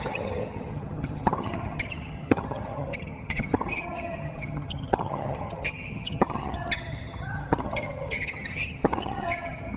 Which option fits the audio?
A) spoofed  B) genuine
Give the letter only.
A